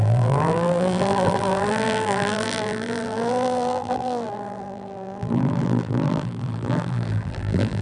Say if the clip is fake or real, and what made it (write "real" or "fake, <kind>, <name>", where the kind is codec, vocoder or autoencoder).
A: fake, vocoder, BigVGAN v2